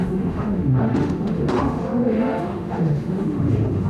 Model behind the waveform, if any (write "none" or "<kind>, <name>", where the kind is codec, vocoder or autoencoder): autoencoder, DAC-VAE